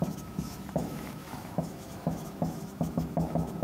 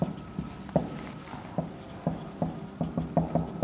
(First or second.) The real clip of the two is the second